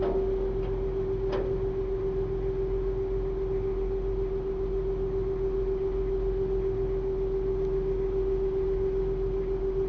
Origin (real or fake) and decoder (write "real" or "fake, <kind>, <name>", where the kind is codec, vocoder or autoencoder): real